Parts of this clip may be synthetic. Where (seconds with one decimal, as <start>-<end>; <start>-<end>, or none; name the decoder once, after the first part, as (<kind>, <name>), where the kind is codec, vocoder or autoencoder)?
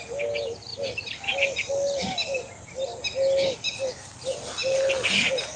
none